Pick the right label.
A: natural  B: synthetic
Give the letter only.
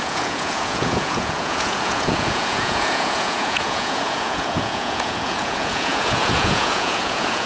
B